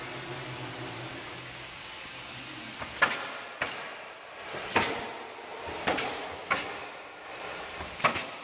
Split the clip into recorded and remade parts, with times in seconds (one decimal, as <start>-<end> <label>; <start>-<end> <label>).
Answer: 0.0-1.1 recorded; 1.1-1.8 remade; 1.8-8.4 recorded